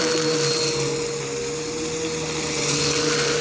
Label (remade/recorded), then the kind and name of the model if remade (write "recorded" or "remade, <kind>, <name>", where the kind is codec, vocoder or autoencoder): recorded